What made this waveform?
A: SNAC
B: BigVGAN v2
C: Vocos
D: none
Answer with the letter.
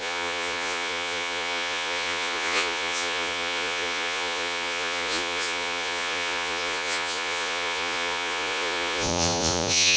C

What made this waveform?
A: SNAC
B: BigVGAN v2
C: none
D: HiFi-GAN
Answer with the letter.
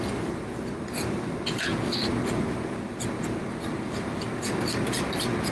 C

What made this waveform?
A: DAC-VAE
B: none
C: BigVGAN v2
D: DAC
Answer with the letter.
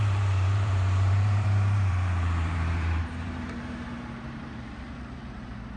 C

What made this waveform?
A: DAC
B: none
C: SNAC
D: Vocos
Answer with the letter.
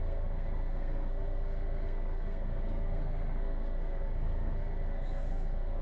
C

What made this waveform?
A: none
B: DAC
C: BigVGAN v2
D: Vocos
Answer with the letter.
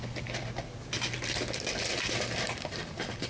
A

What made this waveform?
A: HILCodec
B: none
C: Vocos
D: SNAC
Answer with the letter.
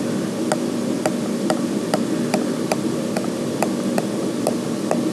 B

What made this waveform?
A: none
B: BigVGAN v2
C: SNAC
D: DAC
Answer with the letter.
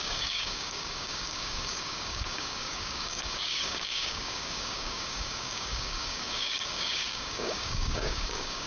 D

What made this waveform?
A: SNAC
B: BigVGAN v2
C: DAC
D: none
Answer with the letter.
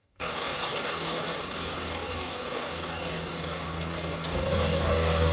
C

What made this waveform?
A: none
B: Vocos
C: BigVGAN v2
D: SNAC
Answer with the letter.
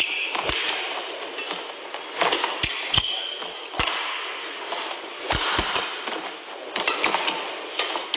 A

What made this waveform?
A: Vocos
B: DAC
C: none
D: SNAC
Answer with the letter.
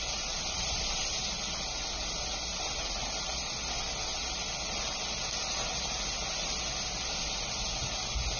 C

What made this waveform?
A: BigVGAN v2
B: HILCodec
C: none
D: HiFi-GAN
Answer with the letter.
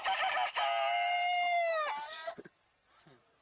C